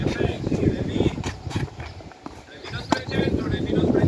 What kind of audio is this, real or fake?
fake